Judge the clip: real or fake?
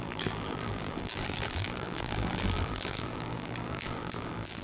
fake